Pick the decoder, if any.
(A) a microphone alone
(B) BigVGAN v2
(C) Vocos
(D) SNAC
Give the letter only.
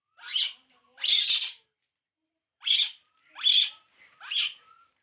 A